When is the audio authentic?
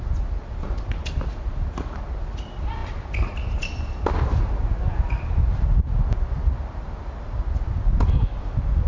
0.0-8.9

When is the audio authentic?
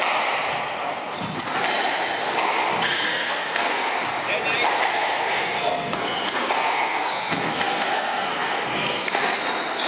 0.0-3.1; 3.9-4.9; 9.4-9.9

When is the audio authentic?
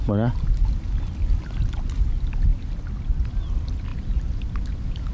0.0-5.1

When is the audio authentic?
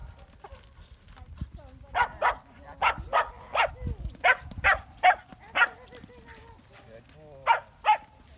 0.0-8.4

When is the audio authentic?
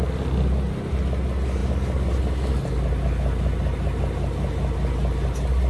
0.0-5.7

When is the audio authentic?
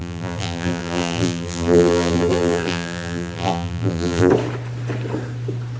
4.3-5.8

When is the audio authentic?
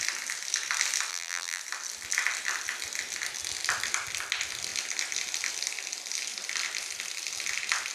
0.0-1.1; 1.6-7.9